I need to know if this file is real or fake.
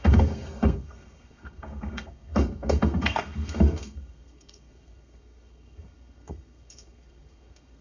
fake